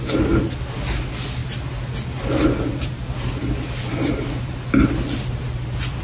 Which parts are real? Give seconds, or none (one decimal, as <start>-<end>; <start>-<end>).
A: 0.0-6.0